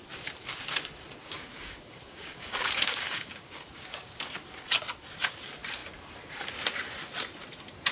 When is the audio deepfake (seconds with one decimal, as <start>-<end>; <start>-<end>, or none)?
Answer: 1.2-4.2